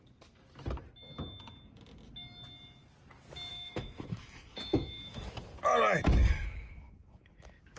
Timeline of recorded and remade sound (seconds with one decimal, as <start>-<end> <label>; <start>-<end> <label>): 0.0-3.5 recorded; 3.5-5.3 remade; 5.3-6.2 recorded; 6.2-7.3 remade; 7.3-7.8 recorded